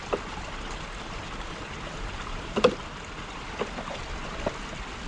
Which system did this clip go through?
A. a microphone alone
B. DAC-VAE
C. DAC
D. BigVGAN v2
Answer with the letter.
A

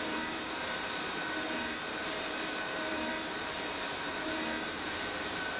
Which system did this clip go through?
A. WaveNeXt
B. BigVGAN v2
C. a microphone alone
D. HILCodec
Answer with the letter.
B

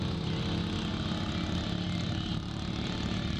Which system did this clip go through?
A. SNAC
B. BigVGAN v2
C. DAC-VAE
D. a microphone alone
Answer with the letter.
D